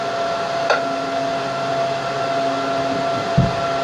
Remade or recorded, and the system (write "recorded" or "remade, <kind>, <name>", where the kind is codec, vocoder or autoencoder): recorded